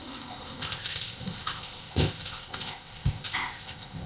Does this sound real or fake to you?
fake